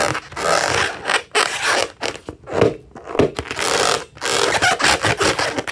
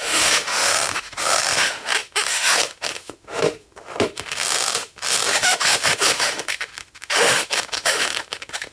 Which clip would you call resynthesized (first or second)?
second